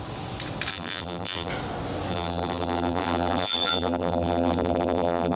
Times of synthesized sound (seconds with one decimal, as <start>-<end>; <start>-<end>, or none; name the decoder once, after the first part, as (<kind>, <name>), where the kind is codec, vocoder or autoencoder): 0.7-1.5 (vocoder, BigVGAN v2); 2.1-5.4